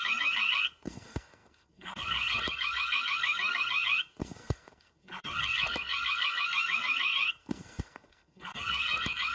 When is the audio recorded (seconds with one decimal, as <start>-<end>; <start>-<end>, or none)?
none